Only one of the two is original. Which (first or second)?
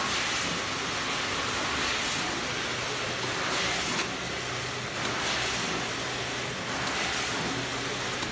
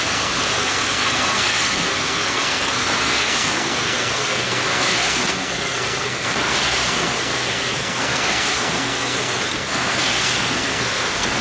first